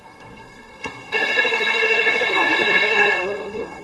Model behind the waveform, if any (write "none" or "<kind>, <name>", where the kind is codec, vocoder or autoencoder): codec, SNAC